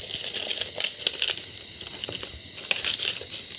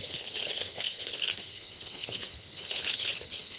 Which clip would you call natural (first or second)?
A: first